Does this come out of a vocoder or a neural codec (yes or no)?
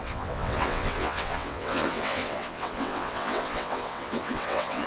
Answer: yes